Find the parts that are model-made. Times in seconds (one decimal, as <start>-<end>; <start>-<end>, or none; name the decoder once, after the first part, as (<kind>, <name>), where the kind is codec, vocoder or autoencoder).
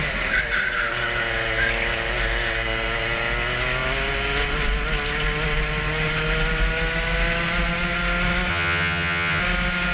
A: 8.5-9.4 (vocoder, HiFi-GAN)